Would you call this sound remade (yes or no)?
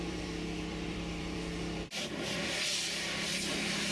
yes